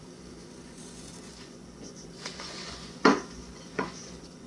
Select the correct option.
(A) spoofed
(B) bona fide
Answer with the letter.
A